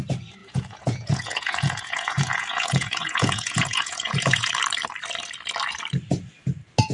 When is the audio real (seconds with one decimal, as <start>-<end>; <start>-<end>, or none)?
0.0-0.4; 4.5-6.9